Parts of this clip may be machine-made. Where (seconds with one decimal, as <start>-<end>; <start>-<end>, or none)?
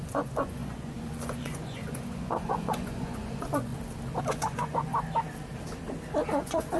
0.0-3.7; 4.2-4.9; 6.3-6.8